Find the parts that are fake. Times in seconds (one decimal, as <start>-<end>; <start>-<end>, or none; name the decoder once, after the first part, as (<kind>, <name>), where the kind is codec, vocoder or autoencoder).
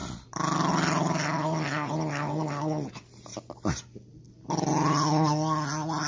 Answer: none